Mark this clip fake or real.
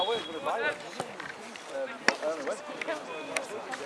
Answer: real